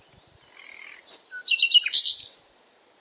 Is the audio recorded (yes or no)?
yes